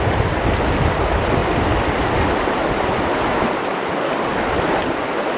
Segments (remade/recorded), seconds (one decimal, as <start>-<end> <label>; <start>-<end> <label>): 0.0-5.4 recorded